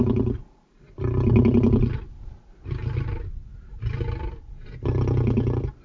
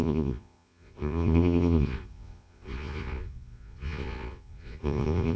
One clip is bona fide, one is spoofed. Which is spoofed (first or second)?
second